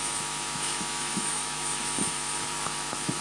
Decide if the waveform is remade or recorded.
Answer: remade